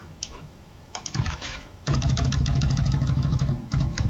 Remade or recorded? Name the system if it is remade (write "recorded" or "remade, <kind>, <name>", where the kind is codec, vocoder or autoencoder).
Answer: remade, autoencoder, DAC-VAE